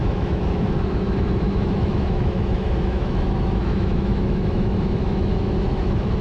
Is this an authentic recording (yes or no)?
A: no